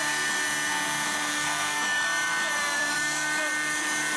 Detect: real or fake real